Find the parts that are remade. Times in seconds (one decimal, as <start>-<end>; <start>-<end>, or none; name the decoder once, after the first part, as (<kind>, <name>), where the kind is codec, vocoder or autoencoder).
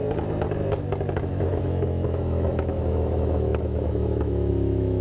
1.2-5.0 (autoencoder, DAC-VAE)